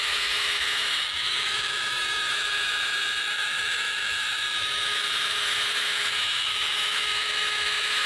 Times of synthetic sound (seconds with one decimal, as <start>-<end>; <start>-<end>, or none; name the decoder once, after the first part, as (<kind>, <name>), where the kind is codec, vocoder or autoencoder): 0.0-8.1 (autoencoder, DAC-VAE)